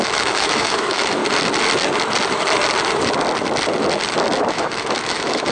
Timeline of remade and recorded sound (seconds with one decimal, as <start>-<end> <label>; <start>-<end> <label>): 0.0-1.2 remade; 1.2-4.5 recorded; 4.5-5.5 remade